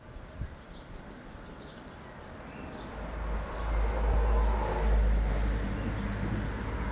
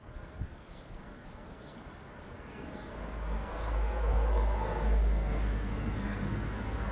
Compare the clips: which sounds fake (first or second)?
second